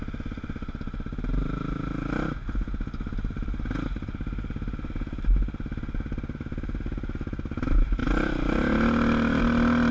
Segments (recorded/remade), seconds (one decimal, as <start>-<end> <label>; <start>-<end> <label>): 0.0-9.9 recorded